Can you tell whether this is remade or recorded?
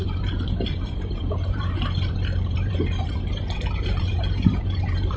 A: remade